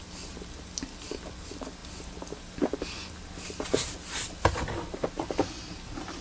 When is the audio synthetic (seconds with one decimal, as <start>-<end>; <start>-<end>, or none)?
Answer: none